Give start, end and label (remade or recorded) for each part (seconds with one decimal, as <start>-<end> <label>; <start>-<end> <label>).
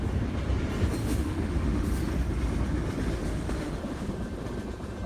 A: 0.0-1.0 recorded; 1.0-2.0 remade; 2.0-3.2 recorded; 3.2-3.8 remade; 3.8-5.1 recorded